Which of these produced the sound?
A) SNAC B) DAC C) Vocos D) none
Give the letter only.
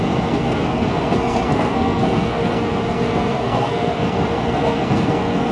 A